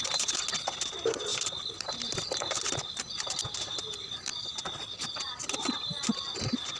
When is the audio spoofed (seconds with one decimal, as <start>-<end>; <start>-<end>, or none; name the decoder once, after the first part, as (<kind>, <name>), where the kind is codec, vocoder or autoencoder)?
none